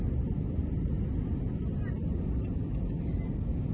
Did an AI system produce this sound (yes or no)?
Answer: no